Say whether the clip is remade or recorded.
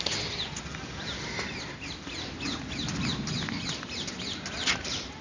recorded